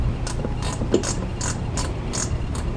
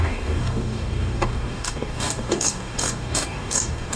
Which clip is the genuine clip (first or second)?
first